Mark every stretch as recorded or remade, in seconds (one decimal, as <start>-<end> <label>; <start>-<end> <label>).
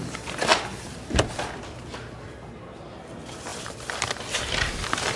0.0-5.2 remade